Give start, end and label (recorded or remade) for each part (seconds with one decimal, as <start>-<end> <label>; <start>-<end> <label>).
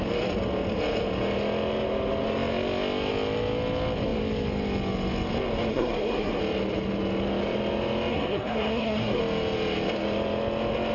0.0-5.7 recorded; 5.7-6.4 remade; 6.4-8.1 recorded; 8.1-9.2 remade; 9.2-10.9 recorded